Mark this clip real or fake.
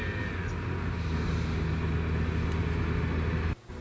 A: real